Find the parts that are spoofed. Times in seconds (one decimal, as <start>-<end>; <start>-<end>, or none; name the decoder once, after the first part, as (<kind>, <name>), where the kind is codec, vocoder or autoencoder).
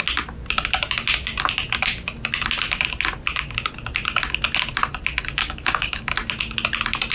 5.4-6.1 (codec, DAC)